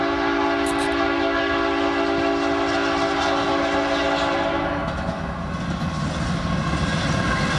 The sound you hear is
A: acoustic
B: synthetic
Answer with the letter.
A